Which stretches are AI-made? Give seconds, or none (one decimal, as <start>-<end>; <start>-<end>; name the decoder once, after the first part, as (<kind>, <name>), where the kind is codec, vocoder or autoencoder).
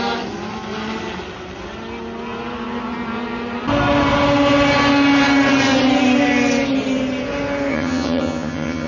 7.7-8.9 (vocoder, HiFi-GAN)